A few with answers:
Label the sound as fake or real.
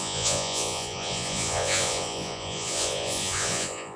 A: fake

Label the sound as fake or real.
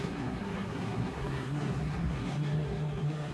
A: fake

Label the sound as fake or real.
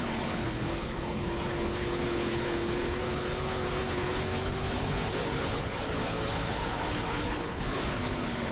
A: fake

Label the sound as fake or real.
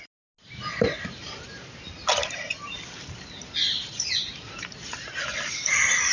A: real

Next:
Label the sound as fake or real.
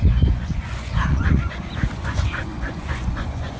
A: fake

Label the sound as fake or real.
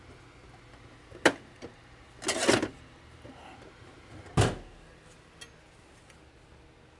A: real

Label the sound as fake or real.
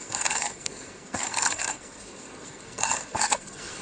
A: fake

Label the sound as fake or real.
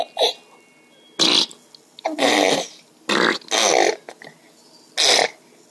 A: real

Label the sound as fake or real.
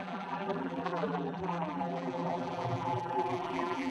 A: fake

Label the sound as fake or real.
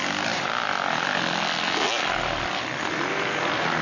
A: real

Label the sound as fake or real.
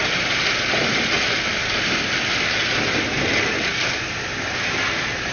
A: real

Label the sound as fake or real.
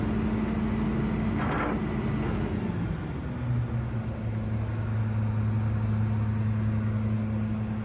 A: real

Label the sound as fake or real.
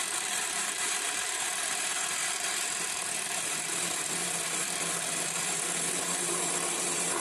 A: fake